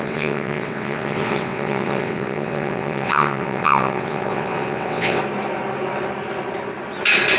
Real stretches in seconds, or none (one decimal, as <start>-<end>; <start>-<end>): 5.2-7.4